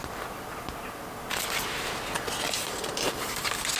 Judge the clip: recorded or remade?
recorded